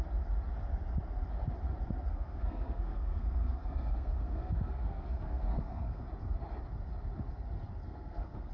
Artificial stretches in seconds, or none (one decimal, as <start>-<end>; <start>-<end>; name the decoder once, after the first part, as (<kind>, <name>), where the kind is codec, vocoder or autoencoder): 2.1-6.0 (codec, SNAC); 7.8-8.5